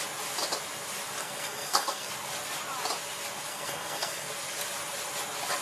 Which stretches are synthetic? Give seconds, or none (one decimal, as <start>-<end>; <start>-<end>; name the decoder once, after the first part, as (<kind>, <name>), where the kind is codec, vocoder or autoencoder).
1.2-2.1 (codec, SNAC); 3.5-4.3